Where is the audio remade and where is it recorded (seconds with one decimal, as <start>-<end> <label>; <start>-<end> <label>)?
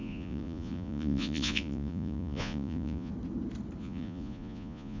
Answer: 0.0-3.1 remade; 3.1-3.8 recorded; 3.8-5.0 remade